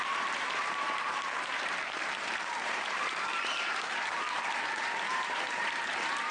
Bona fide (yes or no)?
no